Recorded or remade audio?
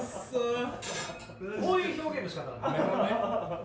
recorded